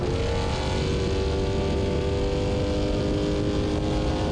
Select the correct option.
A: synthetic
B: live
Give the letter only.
B